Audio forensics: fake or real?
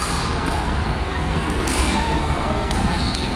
fake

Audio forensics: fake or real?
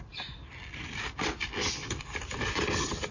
real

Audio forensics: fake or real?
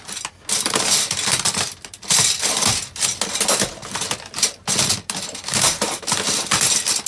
real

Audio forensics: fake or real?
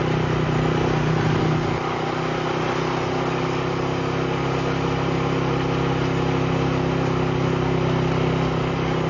real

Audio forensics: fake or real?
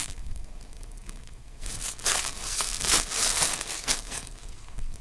fake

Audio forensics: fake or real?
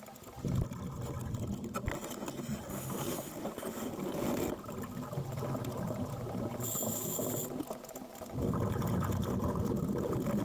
real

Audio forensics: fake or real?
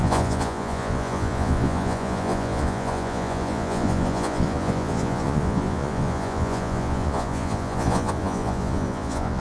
fake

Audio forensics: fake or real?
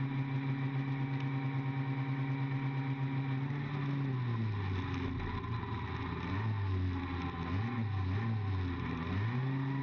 real